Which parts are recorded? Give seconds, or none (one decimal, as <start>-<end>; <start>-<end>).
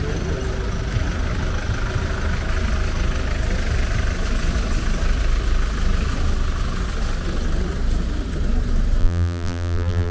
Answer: 0.0-9.0